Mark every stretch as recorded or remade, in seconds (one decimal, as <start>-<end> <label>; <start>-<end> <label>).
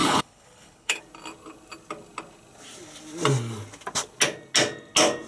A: 0.0-1.0 remade; 1.0-5.3 recorded